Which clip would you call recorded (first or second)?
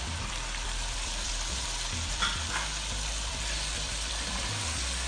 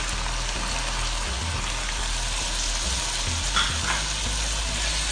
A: second